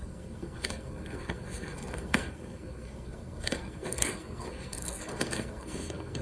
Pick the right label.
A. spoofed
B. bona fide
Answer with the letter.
A